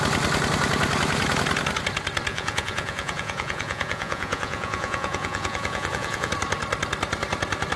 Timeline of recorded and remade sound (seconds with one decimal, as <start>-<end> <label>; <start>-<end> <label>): 0.0-2.3 recorded; 2.3-6.3 remade; 6.3-7.8 recorded